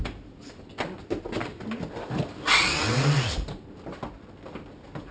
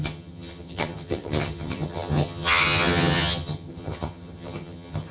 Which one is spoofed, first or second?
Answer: second